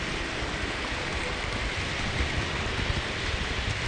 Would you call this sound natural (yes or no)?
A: yes